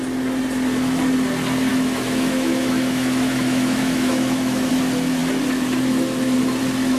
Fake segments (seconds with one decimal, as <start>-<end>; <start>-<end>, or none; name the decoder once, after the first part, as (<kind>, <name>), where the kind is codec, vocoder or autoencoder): 1.7-4.7 (autoencoder, DAC-VAE)